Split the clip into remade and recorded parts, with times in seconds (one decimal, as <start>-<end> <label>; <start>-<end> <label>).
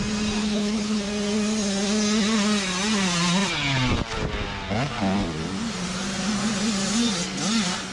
0.0-0.4 recorded; 0.4-1.0 remade; 1.0-7.9 recorded